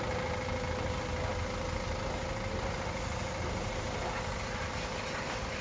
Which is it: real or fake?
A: real